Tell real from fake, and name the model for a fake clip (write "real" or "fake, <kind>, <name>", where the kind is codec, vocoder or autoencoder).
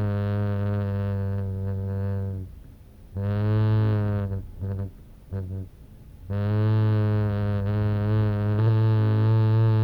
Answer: real